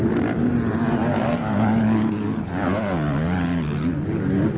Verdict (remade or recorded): recorded